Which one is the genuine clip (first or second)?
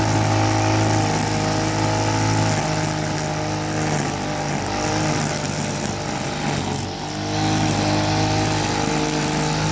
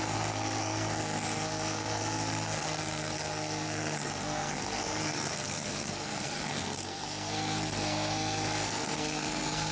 first